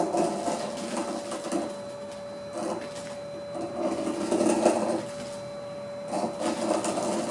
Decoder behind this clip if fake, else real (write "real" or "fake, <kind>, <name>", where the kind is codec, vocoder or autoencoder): real